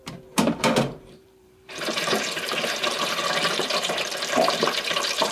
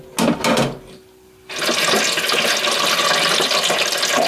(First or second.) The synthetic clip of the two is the first